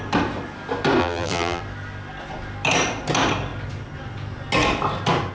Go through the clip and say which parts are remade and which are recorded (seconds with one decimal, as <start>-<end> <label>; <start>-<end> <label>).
0.0-1.0 recorded; 1.0-1.6 remade; 1.6-5.3 recorded